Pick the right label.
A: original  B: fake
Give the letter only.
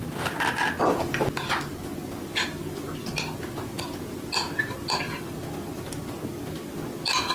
A